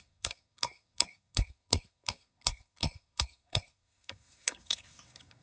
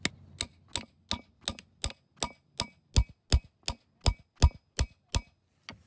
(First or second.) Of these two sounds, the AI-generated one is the first